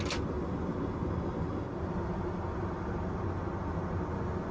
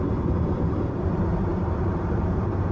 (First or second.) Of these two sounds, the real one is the first